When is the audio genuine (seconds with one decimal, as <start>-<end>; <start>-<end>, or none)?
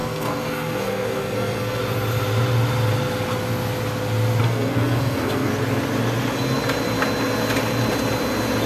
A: 1.8-4.4; 5.5-8.7